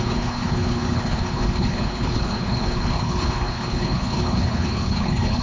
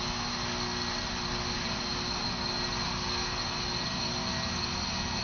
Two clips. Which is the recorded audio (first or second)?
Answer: second